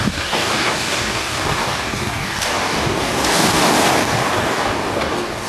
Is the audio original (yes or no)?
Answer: no